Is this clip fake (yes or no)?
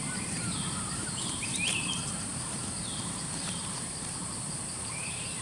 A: yes